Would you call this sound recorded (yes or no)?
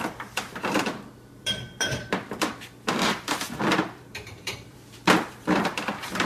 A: no